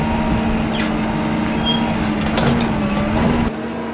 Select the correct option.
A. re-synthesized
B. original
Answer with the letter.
B